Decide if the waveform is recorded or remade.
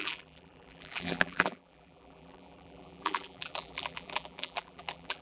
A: remade